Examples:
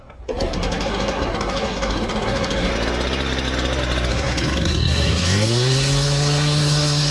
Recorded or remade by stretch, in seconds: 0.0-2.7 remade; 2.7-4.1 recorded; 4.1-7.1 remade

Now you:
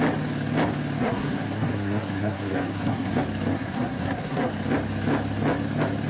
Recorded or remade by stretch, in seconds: 0.0-1.0 recorded; 1.0-3.1 remade; 3.1-3.5 recorded; 3.5-4.5 remade; 4.5-6.1 recorded

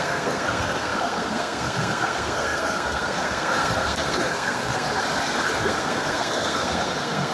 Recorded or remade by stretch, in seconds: 0.0-7.3 remade

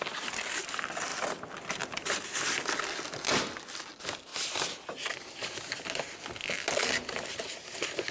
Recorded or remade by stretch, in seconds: 0.0-8.1 recorded